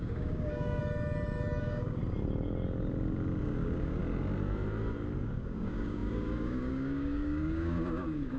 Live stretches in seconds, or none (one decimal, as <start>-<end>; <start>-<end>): 0.8-1.6; 2.0-3.4; 4.0-5.2